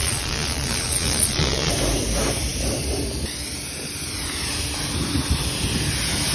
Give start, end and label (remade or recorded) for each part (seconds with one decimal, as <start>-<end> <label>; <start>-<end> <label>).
0.0-1.7 remade; 1.7-6.3 recorded